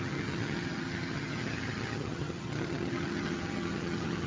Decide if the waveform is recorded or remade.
remade